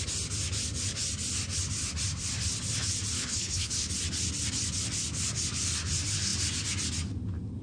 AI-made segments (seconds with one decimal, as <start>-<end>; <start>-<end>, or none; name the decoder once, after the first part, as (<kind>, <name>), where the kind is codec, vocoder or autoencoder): 3.2-3.9 (codec, HILCodec)